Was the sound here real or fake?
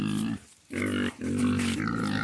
real